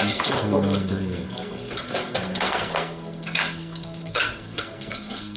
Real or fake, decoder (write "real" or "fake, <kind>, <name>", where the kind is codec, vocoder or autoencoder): fake, codec, SNAC